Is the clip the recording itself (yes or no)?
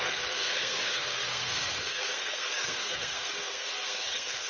no